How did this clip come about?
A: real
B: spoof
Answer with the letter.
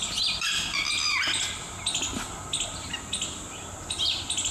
A